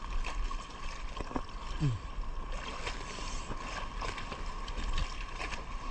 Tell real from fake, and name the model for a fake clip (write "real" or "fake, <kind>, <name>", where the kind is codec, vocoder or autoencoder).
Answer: real